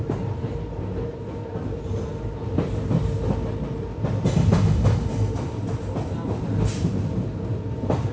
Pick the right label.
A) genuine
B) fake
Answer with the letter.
A